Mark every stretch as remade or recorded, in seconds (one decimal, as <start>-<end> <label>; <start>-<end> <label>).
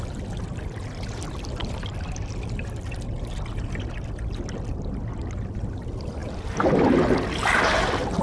0.0-8.2 recorded